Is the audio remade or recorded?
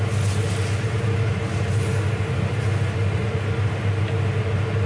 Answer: recorded